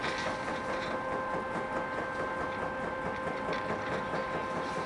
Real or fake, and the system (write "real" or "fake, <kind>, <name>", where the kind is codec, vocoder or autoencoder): real